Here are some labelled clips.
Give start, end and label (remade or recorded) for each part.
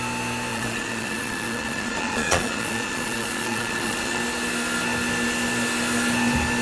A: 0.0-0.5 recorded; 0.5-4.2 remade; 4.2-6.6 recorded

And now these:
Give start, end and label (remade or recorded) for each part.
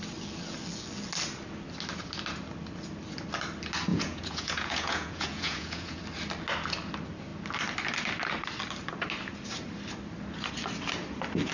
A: 0.0-3.9 recorded; 3.9-6.0 remade; 6.0-11.5 recorded